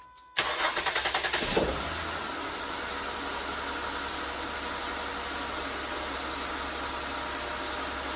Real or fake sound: real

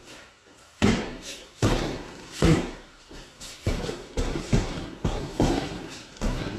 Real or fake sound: fake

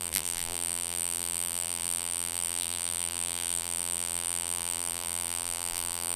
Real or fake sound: fake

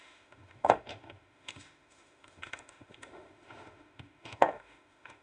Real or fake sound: fake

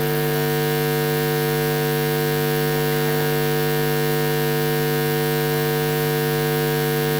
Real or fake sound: real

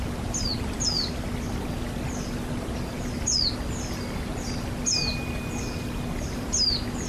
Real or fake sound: real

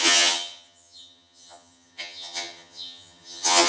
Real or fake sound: fake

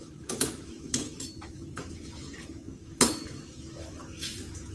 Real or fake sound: fake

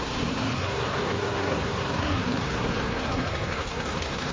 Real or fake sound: fake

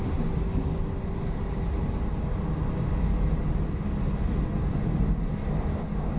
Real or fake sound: real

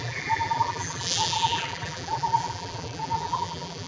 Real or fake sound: fake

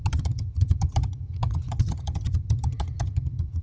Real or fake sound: fake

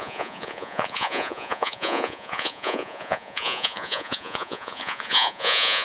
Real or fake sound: fake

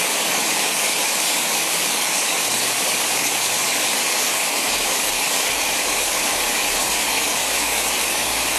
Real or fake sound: fake